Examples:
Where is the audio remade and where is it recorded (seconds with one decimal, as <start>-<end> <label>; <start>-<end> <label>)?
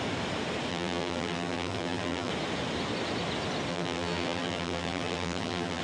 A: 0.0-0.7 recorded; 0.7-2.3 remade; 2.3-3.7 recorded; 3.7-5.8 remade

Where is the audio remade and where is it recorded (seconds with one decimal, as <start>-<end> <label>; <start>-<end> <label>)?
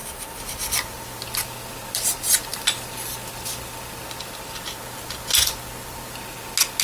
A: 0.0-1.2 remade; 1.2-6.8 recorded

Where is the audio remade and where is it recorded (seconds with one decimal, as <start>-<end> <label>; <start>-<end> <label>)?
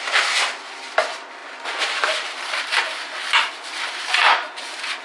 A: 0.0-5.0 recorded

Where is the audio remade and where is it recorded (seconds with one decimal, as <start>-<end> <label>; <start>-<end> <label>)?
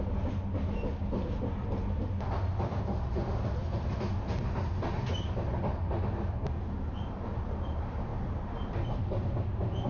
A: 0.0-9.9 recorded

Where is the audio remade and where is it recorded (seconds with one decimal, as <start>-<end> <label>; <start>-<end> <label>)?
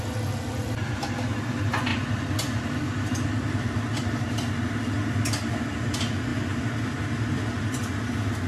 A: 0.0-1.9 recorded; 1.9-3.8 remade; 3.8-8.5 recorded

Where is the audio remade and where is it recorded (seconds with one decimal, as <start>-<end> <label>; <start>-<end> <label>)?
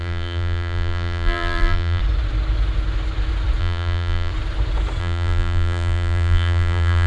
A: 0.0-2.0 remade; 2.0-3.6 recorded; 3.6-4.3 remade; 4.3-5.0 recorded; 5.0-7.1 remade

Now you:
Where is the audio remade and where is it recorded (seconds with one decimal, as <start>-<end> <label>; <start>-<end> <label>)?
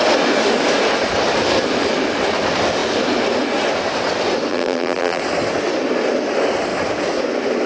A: 0.0-4.5 recorded; 4.5-5.2 remade; 5.2-7.7 recorded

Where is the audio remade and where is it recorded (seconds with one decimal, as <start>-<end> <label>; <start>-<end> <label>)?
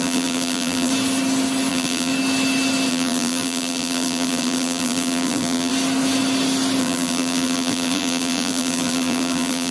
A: 0.0-0.9 remade; 0.9-1.7 recorded; 1.7-2.1 remade; 2.1-2.9 recorded; 2.9-5.7 remade; 5.7-6.8 recorded; 6.8-9.7 remade